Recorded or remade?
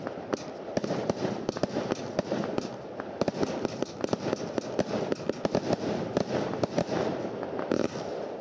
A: recorded